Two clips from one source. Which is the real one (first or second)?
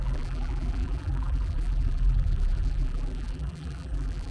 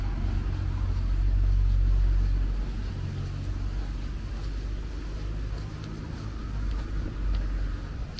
second